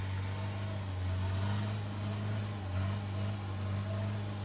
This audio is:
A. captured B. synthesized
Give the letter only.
A